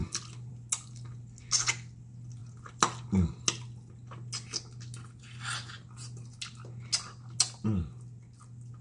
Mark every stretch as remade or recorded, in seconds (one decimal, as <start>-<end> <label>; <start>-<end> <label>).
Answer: 0.0-8.8 recorded

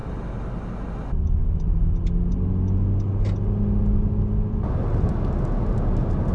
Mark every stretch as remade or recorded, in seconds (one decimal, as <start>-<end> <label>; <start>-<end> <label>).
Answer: 0.0-6.3 recorded